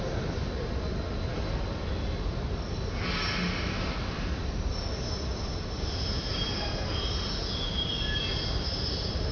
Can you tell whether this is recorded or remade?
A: recorded